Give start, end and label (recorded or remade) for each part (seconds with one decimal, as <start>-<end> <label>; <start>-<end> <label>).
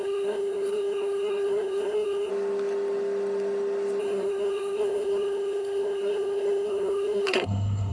0.0-2.3 remade; 2.3-4.0 recorded; 4.0-7.9 remade